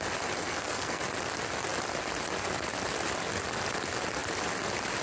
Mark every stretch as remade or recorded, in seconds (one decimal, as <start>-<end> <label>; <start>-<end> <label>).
0.0-0.4 recorded; 0.4-1.0 remade; 1.0-5.0 recorded